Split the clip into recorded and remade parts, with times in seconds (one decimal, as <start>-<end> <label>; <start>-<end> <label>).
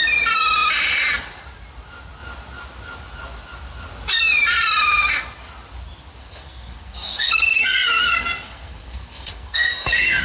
0.0-6.2 recorded; 6.2-10.2 remade